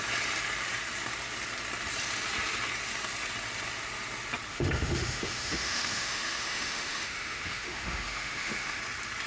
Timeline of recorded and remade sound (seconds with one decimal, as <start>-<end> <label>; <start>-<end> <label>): 0.0-4.5 recorded; 4.5-8.8 remade; 8.8-9.3 recorded